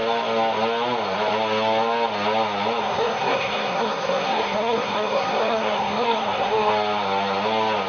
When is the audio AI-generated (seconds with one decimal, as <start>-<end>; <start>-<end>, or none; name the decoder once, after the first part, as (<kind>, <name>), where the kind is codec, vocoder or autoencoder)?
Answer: 2.8-6.7 (codec, SNAC)